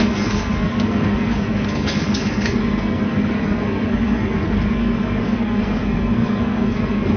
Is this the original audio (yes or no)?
no